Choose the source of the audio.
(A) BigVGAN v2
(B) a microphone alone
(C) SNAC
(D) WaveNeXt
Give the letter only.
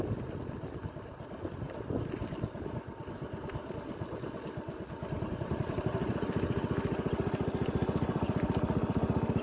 B